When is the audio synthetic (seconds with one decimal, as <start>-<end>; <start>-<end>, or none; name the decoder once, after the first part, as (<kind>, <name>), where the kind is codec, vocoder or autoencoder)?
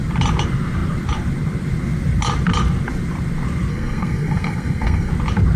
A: 3.7-5.1 (codec, SNAC)